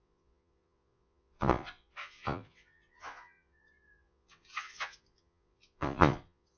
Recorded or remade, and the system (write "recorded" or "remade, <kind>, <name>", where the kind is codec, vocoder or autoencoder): remade, vocoder, Vocos